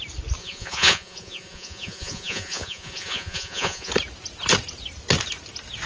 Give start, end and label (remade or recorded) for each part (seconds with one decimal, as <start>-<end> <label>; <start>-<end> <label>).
0.0-0.4 recorded; 0.4-3.9 remade; 3.9-5.9 recorded